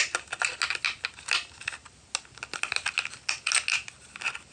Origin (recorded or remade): recorded